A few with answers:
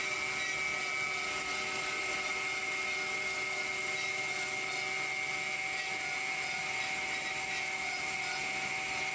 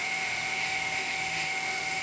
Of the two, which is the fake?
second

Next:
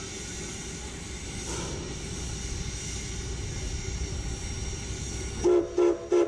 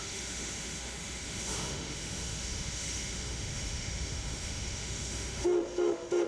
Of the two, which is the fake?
second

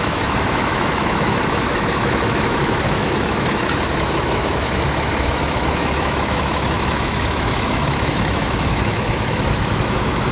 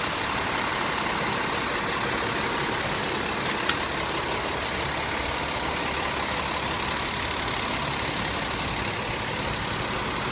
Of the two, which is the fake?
first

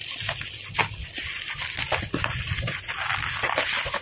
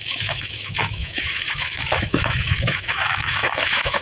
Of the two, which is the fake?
second